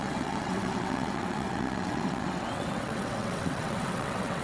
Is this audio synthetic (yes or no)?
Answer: yes